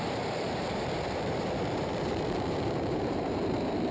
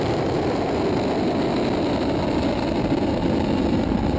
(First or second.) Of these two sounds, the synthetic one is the first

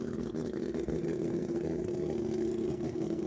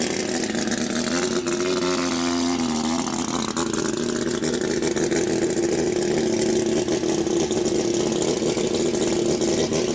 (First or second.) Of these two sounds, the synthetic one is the first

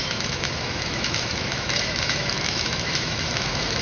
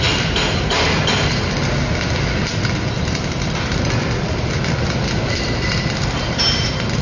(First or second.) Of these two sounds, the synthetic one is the first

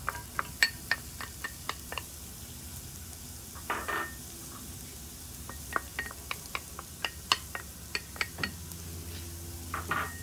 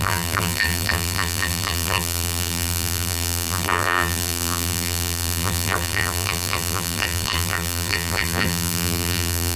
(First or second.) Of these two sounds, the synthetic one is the second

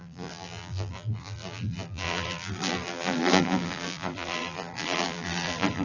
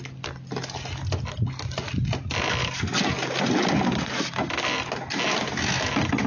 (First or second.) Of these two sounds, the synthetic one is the first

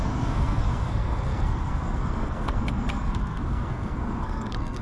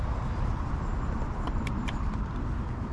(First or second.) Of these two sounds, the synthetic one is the first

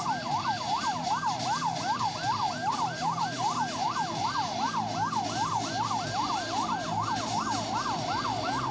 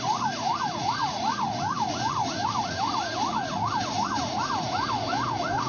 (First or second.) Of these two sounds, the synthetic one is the second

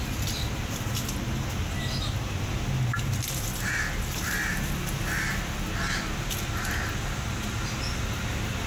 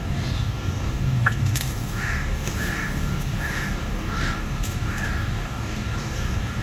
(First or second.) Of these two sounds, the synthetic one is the second